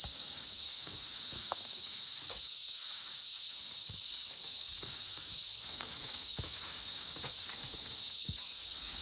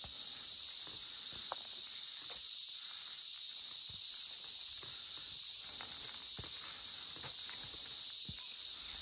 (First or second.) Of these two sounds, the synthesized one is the first